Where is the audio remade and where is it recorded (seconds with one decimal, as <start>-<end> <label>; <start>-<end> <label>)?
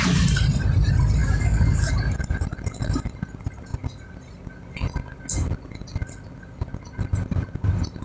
0.0-1.2 recorded; 1.2-1.9 remade; 1.9-8.0 recorded